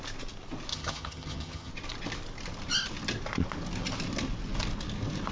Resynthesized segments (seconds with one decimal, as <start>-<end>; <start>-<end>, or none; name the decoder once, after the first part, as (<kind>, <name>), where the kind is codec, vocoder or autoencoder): 0.7-1.7 (vocoder, HiFi-GAN)